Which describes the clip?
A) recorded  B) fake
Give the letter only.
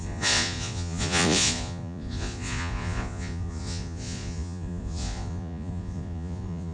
B